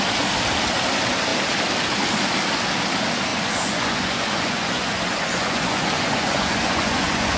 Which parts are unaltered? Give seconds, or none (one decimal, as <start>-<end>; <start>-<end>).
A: 0.0-3.3

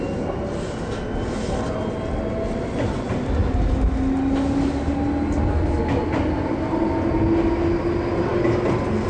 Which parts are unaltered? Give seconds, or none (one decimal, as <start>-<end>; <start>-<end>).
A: 0.0-9.1

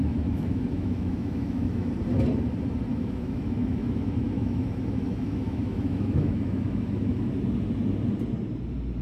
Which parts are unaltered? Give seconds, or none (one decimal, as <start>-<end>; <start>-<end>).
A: 1.9-2.9; 7.3-9.0

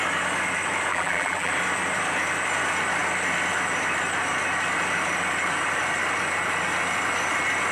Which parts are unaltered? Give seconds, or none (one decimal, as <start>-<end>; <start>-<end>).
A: 0.0-0.9; 1.5-7.7

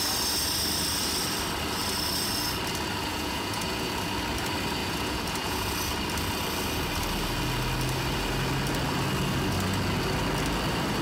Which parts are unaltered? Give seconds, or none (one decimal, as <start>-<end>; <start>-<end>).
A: 0.0-3.1; 3.9-4.8; 5.7-11.0